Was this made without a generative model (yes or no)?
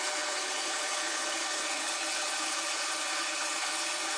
no